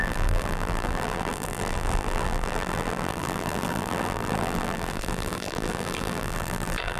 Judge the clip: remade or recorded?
remade